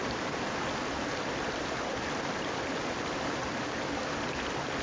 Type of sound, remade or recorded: recorded